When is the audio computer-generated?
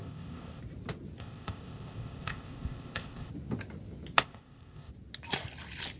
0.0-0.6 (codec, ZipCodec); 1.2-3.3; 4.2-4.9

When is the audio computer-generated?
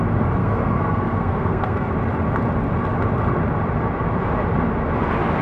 0.4-1.9 (codec, SNAC)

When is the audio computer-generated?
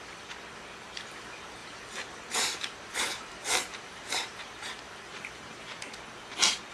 1.6-5.6 (vocoder, BigVGAN v2)